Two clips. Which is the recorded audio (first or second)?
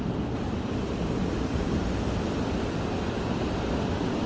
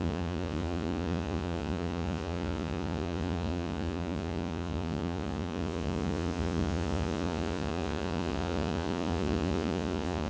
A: first